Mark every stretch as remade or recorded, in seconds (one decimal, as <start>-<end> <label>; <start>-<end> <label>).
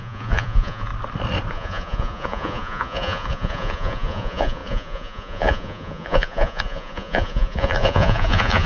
0.0-0.9 remade; 0.9-1.5 recorded; 1.5-8.7 remade